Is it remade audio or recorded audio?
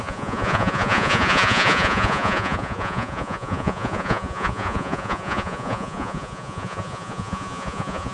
remade